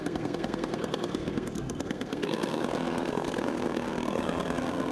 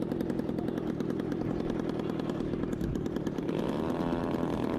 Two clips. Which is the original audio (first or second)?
second